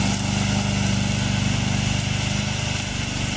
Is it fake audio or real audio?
real